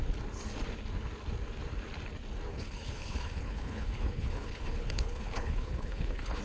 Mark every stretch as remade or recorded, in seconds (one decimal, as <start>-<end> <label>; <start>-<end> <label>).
0.0-2.5 recorded; 2.5-6.4 remade

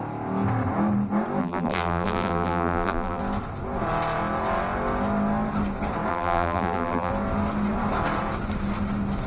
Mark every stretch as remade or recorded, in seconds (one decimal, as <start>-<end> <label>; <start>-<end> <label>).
0.0-1.4 recorded; 1.4-3.2 remade; 3.2-6.1 recorded; 6.1-7.1 remade; 7.1-9.3 recorded

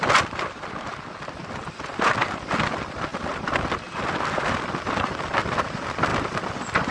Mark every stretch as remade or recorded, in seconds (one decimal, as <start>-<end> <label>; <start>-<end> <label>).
0.0-0.9 remade; 0.9-1.4 recorded; 1.4-6.9 remade